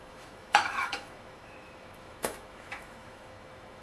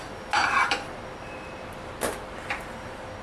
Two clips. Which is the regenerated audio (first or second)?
first